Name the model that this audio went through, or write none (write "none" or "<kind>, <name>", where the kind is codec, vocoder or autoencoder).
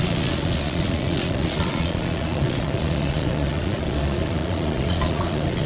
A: vocoder, Vocos